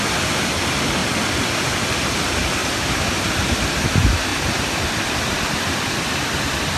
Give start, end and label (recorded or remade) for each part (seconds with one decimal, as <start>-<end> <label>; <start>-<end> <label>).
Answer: 0.0-1.0 recorded; 1.0-1.9 remade; 1.9-2.6 recorded; 2.6-3.9 remade; 3.9-4.3 recorded; 4.3-6.8 remade